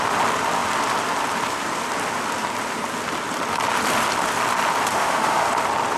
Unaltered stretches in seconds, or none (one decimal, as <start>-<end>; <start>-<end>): 0.0-4.9; 5.5-6.0